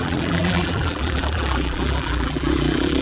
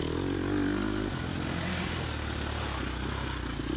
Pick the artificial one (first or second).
first